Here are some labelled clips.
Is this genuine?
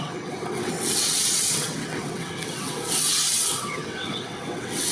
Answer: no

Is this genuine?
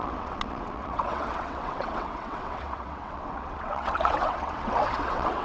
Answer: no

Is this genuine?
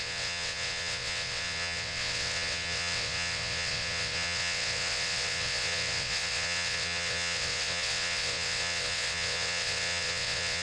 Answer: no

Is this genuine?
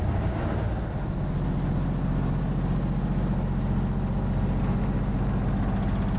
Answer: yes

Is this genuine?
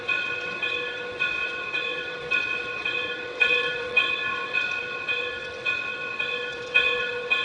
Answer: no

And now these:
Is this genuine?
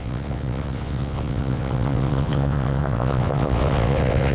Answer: no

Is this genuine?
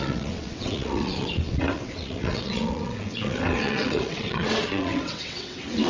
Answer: no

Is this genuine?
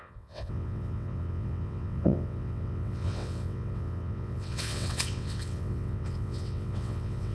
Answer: no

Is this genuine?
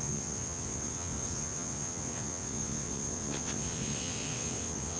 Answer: no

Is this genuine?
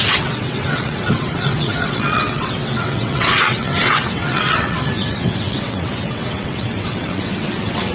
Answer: no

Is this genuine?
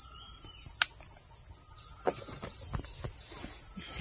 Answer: yes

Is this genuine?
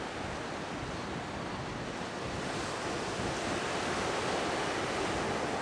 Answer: yes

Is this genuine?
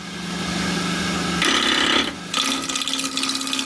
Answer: yes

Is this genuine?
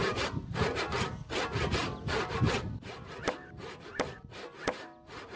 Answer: yes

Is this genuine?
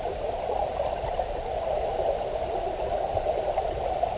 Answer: yes